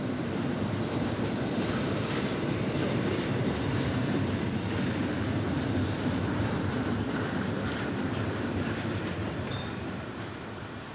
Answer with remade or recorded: remade